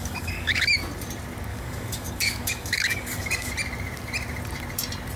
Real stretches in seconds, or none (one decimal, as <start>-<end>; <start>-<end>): 0.7-1.5; 3.5-5.2